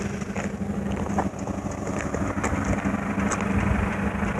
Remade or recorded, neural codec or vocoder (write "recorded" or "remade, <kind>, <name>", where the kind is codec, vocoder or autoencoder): recorded